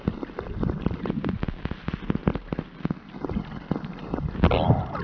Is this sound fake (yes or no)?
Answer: no